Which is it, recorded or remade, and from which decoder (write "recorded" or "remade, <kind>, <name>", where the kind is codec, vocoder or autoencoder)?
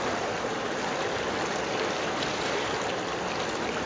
recorded